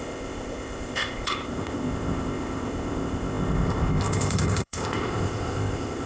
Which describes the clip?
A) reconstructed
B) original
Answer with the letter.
A